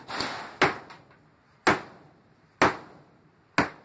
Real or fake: real